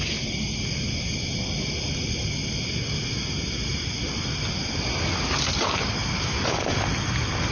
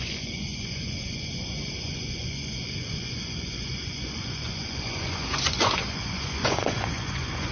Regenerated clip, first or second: second